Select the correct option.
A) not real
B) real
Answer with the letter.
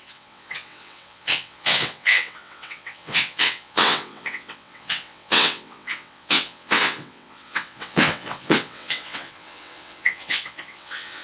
A